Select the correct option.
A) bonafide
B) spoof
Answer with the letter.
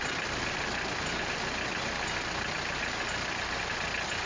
A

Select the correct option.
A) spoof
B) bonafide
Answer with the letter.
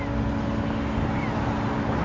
B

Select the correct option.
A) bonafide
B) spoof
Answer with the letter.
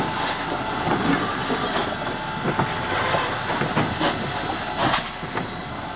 A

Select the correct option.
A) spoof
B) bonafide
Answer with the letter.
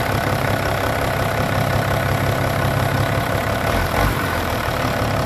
A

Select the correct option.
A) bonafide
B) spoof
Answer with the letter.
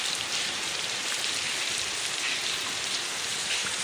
A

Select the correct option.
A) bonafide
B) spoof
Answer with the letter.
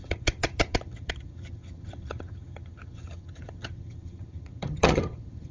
B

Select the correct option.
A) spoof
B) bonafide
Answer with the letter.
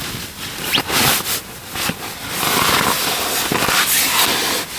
B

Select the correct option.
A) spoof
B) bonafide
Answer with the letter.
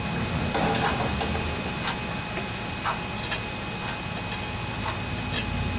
B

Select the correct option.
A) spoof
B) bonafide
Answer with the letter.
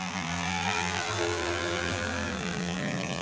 A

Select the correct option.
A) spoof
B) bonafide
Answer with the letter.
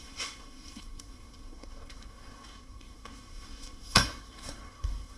A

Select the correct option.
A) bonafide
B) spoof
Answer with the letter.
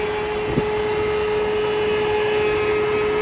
A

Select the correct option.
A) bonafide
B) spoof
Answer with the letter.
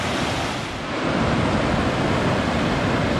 A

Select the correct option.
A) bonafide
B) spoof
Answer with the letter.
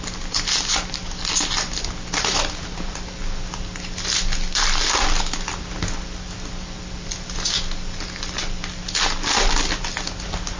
A